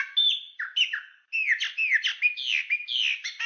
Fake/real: real